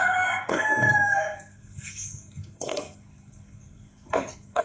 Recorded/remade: remade